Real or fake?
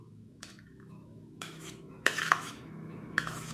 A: fake